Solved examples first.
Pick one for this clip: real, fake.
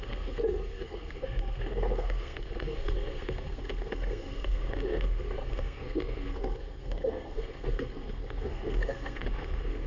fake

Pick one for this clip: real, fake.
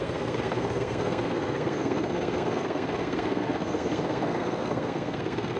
fake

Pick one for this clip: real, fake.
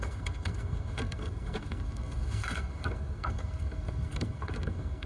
fake